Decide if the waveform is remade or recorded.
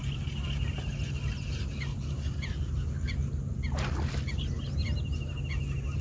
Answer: recorded